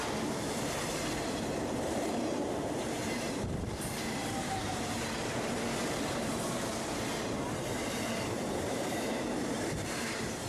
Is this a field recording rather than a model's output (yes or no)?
no